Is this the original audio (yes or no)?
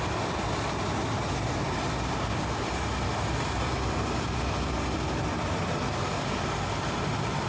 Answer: yes